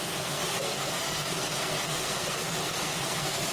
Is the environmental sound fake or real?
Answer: fake